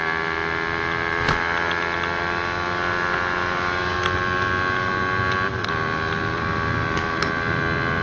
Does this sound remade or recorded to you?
recorded